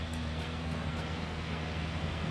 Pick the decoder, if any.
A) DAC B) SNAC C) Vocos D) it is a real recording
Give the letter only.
B